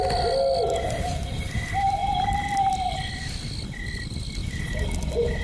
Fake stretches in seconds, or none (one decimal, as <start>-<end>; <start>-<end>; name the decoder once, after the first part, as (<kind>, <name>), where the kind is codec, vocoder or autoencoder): none